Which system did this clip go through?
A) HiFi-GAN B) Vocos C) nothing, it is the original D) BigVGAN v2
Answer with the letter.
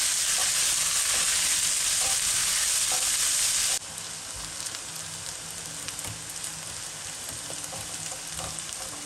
C